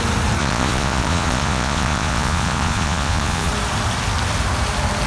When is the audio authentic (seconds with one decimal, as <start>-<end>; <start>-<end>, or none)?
0.0-0.4; 3.5-5.1